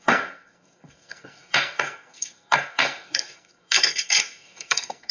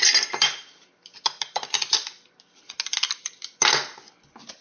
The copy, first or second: first